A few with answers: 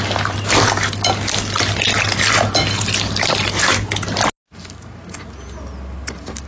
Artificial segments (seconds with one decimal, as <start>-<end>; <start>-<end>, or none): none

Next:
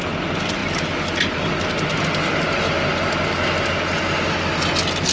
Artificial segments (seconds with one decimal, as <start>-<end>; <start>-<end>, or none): none

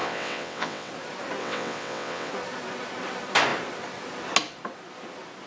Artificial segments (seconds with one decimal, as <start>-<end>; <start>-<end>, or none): 0.0-0.9; 1.4-2.3

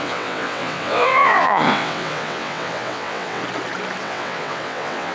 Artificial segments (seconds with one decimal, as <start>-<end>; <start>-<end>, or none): 0.0-3.4; 4.0-5.1

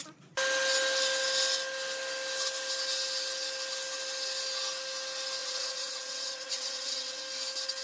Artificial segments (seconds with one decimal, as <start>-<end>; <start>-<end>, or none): 5.4-7.2